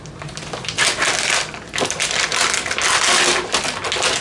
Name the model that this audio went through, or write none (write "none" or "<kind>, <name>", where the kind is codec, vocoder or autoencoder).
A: none